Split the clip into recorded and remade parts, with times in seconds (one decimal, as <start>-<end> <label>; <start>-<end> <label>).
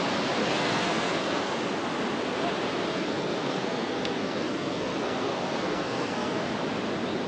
0.0-0.4 recorded; 0.4-1.5 remade; 1.5-2.9 recorded; 2.9-6.5 remade; 6.5-7.3 recorded